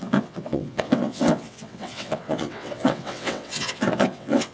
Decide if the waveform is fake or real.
fake